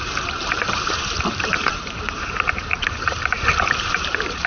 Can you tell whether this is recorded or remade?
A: remade